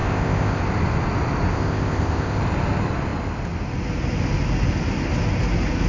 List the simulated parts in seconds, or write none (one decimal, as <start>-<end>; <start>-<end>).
0.0-0.6; 1.5-2.4